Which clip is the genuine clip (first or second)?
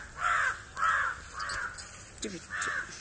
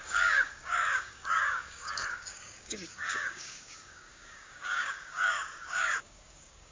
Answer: first